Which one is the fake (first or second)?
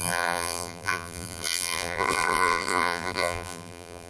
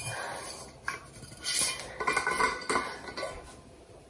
first